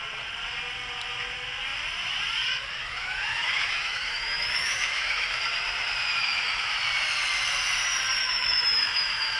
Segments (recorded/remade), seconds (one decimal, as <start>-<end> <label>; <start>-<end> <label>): 0.0-2.8 recorded; 2.8-5.4 remade; 5.4-6.0 recorded; 6.0-6.7 remade; 6.7-8.2 recorded; 8.2-9.4 remade